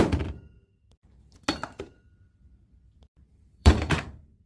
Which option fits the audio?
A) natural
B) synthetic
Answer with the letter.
B